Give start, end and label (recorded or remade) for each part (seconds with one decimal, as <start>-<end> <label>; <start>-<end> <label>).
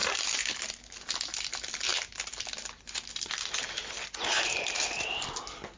0.0-0.6 remade; 0.6-4.3 recorded; 4.3-4.8 remade; 4.8-5.8 recorded